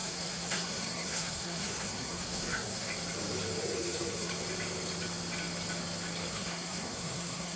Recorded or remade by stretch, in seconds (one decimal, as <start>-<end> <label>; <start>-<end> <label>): 0.0-2.9 remade; 2.9-3.6 recorded; 3.6-4.3 remade; 4.3-6.3 recorded; 6.3-7.6 remade